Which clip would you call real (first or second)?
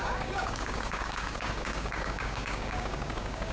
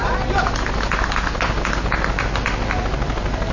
second